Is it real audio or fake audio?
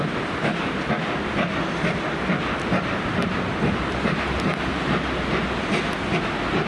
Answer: real